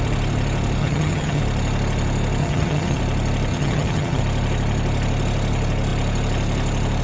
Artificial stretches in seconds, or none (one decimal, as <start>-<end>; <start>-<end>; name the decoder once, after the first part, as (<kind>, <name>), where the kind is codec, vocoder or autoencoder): 0.8-1.4 (vocoder, HiFi-GAN); 2.4-3.0; 3.5-4.2